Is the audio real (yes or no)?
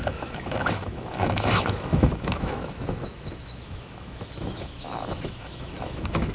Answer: no